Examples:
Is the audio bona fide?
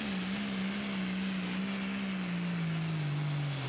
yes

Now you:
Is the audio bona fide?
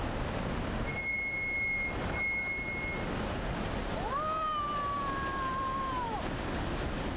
yes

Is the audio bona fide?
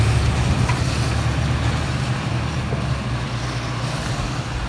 yes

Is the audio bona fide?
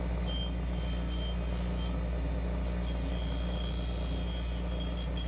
yes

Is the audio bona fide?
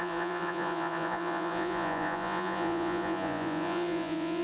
no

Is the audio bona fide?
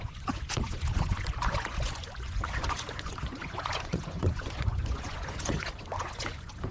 no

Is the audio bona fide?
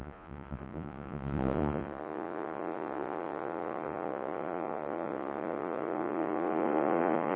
no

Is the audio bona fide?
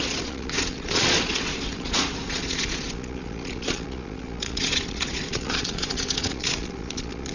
no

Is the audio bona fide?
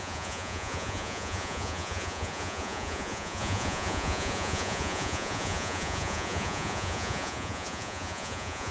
no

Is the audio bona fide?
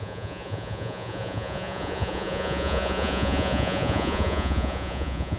no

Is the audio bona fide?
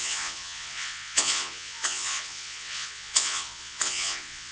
no